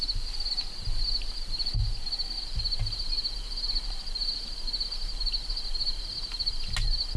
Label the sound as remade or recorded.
recorded